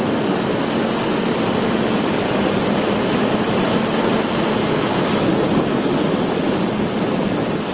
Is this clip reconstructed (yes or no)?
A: no